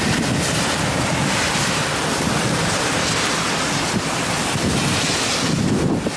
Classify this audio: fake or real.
real